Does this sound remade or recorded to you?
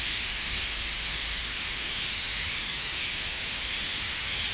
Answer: remade